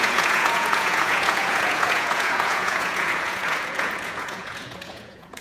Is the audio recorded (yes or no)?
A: no